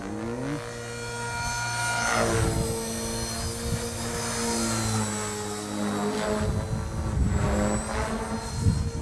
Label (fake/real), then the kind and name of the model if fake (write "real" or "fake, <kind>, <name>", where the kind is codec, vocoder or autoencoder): real